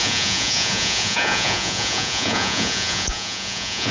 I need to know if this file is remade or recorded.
remade